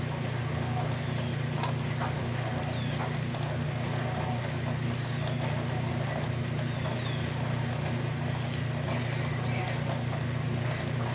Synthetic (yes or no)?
no